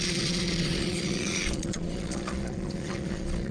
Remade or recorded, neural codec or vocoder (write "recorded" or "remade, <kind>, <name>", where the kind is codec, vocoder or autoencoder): remade, vocoder, Vocos